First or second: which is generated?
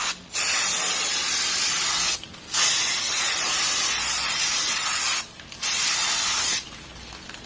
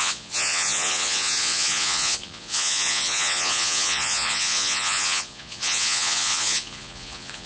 second